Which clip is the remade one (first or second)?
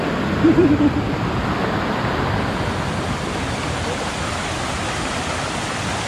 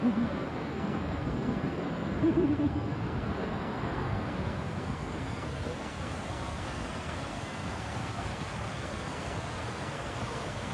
second